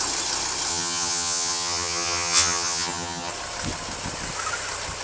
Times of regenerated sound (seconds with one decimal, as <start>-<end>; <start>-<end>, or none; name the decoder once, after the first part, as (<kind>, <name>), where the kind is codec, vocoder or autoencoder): 0.7-3.3 (vocoder, HiFi-GAN)